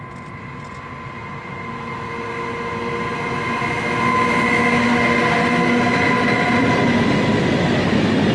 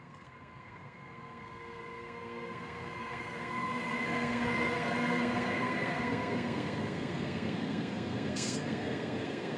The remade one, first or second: second